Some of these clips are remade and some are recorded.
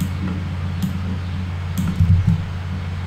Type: recorded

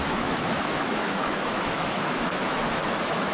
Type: remade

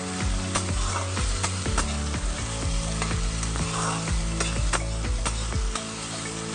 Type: recorded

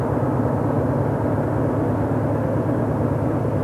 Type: recorded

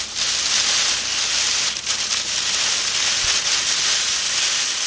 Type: recorded